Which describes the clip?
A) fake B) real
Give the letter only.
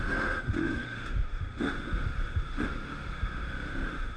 A